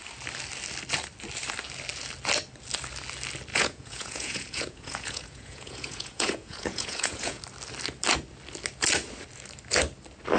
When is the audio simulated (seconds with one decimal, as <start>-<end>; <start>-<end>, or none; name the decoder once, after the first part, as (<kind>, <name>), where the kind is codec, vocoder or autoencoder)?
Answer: 3.5-7.4 (vocoder, Vocos)